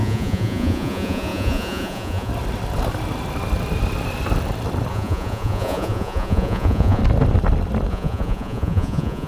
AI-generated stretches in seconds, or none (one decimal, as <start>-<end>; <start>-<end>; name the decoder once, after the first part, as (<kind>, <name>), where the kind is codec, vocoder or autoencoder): 0.0-2.3 (vocoder, Vocos); 4.9-7.0; 7.9-9.3